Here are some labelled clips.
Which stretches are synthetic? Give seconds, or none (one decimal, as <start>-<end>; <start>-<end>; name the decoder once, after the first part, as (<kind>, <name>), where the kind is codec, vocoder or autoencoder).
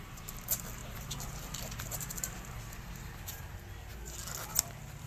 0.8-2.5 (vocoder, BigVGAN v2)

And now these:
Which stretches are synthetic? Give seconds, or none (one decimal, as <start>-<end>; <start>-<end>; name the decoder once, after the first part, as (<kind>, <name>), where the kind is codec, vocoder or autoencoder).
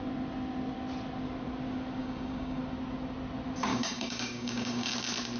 2.0-2.6 (codec, DAC); 3.7-4.9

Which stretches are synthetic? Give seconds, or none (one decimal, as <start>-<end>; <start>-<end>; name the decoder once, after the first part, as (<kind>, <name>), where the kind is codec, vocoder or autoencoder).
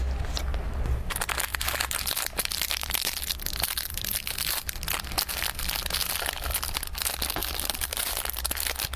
1.5-5.3 (vocoder, BigVGAN v2); 7.4-8.4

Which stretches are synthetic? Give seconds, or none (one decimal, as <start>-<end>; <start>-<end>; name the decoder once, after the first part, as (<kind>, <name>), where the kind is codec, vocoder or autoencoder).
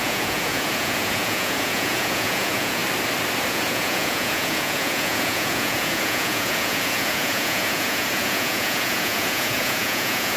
0.0-2.8 (vocoder, Vocos); 3.5-10.4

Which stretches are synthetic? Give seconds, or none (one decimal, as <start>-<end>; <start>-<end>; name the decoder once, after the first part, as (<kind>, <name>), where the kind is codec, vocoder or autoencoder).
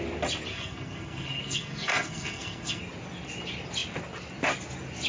0.5-2.8 (codec, SNAC)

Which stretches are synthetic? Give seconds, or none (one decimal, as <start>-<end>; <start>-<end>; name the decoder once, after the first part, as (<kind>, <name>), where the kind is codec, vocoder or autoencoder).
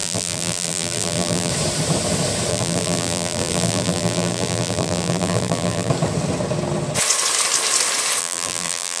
0.0-1.5 (vocoder, BigVGAN v2); 2.5-5.9; 8.2-9.0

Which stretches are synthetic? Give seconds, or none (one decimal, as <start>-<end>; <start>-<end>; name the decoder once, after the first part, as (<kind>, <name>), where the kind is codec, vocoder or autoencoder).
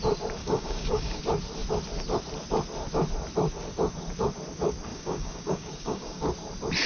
0.4-1.2 (codec, DAC); 4.9-6.2